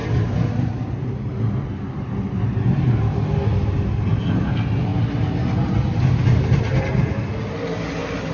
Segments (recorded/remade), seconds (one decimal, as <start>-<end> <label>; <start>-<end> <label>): 0.0-8.3 recorded